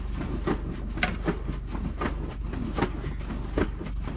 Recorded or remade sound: recorded